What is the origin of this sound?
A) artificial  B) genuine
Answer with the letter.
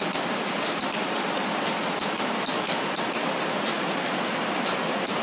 B